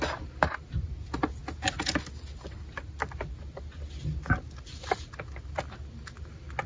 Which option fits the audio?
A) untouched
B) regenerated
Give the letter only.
A